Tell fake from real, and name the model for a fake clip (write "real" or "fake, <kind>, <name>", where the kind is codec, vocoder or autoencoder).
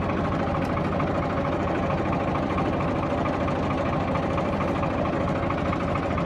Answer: real